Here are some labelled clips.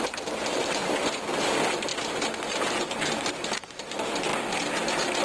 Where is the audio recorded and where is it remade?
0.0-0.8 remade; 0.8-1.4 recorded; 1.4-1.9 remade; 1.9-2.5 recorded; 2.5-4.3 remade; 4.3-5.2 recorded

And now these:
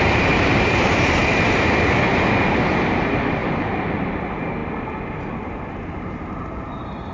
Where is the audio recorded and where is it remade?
0.0-1.2 remade; 1.2-2.7 recorded; 2.7-4.6 remade; 4.6-5.9 recorded; 5.9-7.1 remade

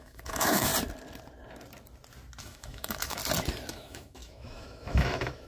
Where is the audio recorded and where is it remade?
0.0-0.7 remade; 0.7-2.4 recorded; 2.4-3.2 remade; 3.2-3.7 recorded; 3.7-5.5 remade

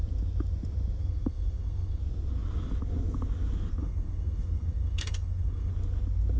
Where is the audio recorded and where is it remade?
0.0-1.0 recorded; 1.0-2.0 remade; 2.0-3.8 recorded; 3.8-5.7 remade; 5.7-6.4 recorded

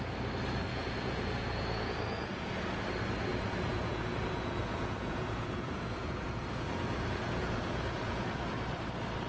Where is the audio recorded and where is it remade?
0.0-0.7 recorded; 0.7-2.8 remade; 2.8-3.3 recorded; 3.3-8.4 remade; 8.4-9.3 recorded